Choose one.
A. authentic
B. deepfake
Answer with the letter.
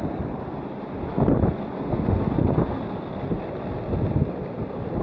A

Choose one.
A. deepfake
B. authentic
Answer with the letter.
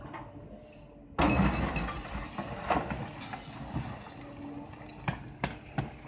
B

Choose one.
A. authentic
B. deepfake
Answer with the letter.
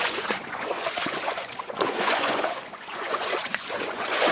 B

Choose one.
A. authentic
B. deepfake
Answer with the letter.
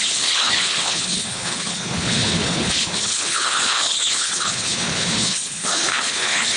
B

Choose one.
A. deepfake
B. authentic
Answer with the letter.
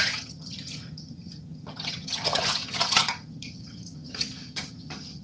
A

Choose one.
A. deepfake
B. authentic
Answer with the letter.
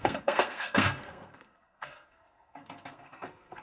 A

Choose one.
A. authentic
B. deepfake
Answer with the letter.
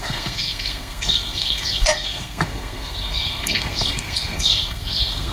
B